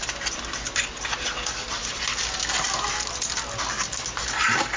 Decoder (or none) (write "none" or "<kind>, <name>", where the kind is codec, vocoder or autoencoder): none